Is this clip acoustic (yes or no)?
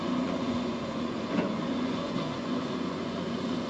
no